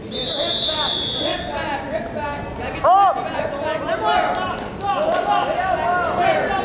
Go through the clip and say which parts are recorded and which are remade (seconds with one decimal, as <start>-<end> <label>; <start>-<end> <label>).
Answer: 0.0-6.6 recorded